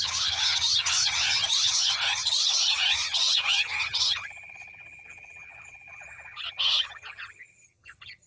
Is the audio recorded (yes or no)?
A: no